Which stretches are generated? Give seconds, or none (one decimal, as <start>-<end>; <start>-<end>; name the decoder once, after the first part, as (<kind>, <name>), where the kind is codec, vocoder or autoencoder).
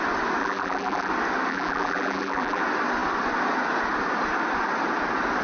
0.4-1.1 (vocoder, BigVGAN v2); 1.5-2.6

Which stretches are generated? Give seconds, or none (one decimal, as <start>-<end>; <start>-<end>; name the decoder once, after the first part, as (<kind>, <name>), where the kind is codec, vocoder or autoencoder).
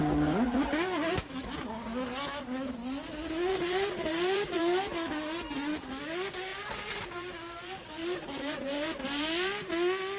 3.5-4.6 (vocoder, BigVGAN v2); 6.5-9.7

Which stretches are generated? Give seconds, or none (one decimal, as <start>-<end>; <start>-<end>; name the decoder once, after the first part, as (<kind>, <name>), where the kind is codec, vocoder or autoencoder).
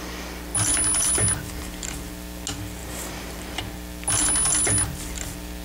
2.8-3.6 (vocoder, BigVGAN v2)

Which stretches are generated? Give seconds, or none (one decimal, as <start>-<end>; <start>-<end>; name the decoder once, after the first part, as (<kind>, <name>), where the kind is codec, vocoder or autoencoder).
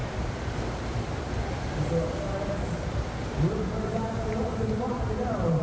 0.0-0.9 (vocoder, BigVGAN v2)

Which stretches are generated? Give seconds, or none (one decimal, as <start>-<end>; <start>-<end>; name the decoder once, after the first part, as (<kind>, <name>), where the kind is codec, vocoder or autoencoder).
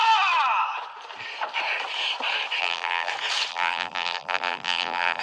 2.6-3.1 (vocoder, BigVGAN v2); 3.5-5.2